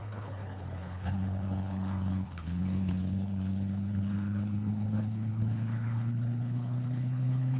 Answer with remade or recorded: remade